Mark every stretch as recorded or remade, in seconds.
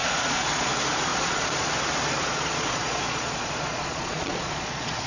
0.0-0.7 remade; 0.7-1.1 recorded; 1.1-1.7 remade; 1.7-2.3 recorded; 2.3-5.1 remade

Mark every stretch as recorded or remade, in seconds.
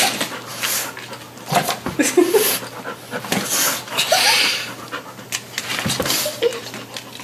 0.0-7.2 recorded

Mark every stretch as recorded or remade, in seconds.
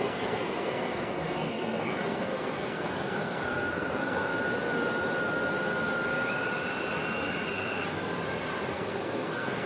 0.0-4.3 remade; 4.3-8.7 recorded; 8.7-9.7 remade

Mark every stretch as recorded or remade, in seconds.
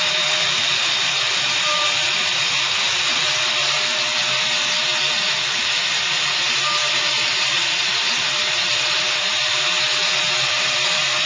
0.0-11.3 remade